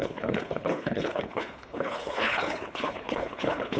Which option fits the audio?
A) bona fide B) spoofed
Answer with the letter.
B